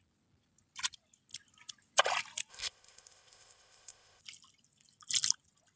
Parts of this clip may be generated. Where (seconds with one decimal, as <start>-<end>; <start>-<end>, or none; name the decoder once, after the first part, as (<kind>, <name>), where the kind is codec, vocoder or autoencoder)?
2.5-4.2 (codec, ZipCodec)